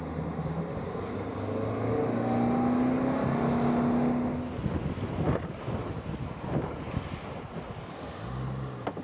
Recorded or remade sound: recorded